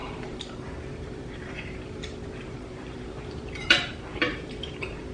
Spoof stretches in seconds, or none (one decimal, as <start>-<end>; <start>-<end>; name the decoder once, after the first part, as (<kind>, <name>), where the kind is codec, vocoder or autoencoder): 0.0-5.1 (vocoder, BigVGAN v2)